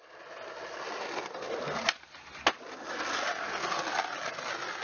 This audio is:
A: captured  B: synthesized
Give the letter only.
A